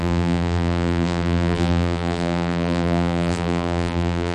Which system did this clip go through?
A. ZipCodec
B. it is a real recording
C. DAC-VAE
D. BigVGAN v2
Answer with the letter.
D